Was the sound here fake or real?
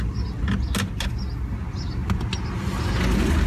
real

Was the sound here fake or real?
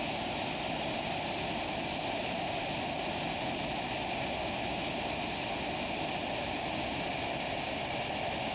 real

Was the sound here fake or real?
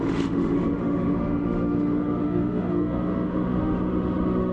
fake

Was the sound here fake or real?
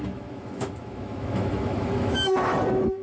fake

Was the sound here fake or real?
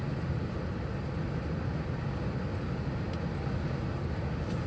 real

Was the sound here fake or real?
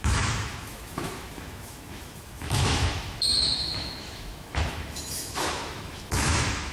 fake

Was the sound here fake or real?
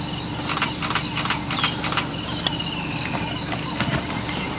real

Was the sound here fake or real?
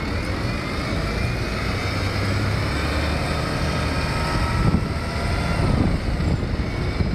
real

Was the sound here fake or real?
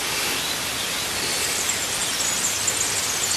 real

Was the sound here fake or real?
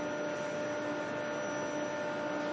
real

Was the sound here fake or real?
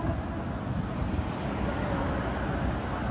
real